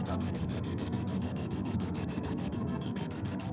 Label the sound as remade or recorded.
remade